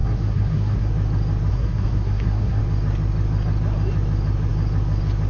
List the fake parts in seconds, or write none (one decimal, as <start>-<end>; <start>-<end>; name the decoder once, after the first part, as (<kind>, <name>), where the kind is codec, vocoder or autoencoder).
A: 0.0-0.9 (codec, SNAC); 1.5-2.6